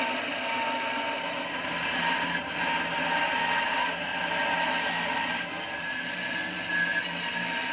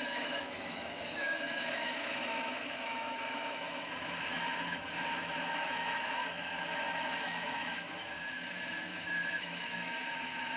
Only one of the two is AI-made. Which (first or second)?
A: second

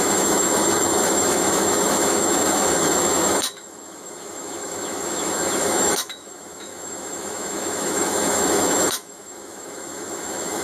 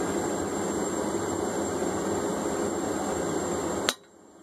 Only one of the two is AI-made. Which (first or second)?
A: first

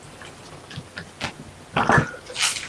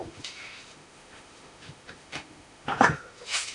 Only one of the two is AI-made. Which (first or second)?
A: second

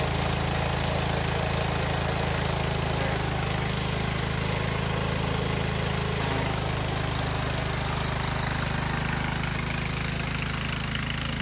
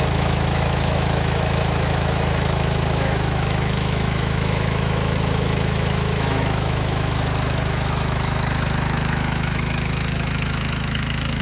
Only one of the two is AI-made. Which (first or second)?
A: second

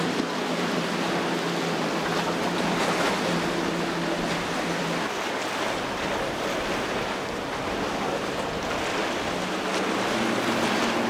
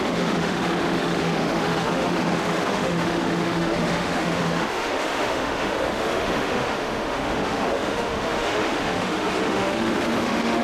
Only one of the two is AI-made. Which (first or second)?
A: second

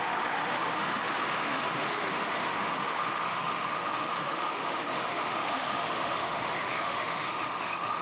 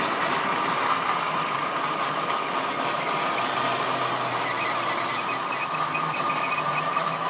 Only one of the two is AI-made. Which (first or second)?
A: first